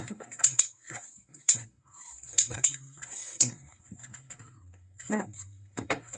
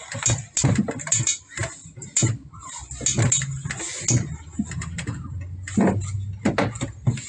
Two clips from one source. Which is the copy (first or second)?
first